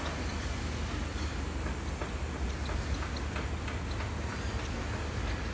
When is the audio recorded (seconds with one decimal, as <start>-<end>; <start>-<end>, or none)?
0.0-5.5

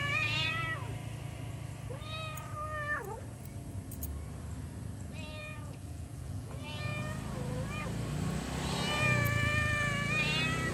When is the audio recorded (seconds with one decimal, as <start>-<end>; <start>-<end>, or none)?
0.6-5.4; 6.9-10.7

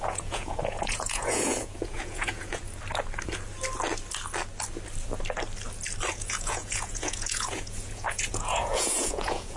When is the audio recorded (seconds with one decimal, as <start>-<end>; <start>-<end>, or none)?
2.6-6.1

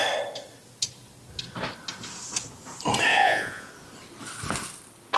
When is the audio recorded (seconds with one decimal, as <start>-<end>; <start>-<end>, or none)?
0.0-3.1; 3.7-5.2

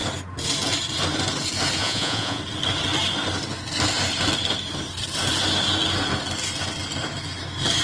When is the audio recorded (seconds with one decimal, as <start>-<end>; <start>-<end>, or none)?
0.0-1.8; 2.4-7.8

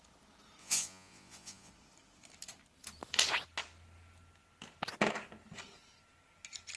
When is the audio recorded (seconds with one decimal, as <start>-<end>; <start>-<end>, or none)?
0.0-0.6; 1.7-6.8

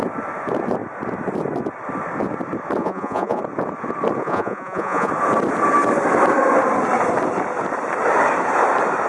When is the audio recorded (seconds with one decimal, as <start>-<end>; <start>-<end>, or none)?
0.0-2.8; 3.4-4.2; 5.1-9.1

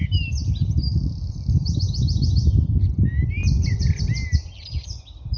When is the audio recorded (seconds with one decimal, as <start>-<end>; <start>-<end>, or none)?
0.0-5.4